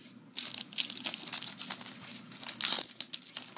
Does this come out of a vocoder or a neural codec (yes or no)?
no